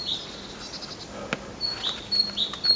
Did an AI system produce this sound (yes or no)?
no